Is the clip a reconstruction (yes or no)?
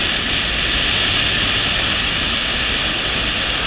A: no